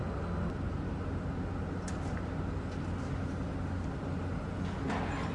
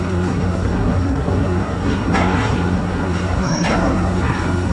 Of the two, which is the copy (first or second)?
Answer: second